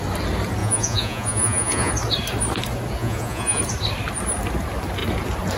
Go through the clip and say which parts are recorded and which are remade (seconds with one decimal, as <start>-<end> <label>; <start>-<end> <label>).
0.0-0.6 recorded; 0.6-1.9 remade; 1.9-3.0 recorded; 3.0-3.6 remade; 3.6-5.6 recorded